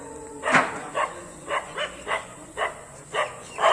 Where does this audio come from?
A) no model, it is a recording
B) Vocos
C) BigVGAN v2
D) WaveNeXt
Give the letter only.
B